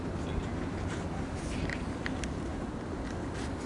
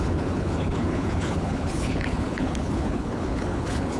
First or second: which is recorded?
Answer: first